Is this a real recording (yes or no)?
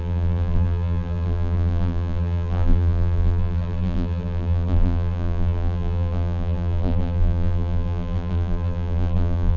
no